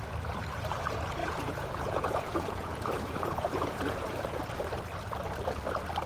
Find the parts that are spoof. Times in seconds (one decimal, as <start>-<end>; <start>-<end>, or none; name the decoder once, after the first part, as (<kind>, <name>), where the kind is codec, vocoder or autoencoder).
1.2-4.4 (vocoder, Vocos)